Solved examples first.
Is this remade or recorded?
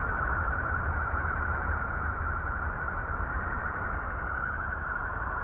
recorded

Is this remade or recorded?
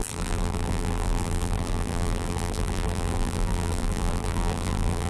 remade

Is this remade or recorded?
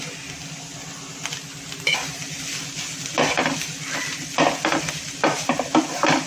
recorded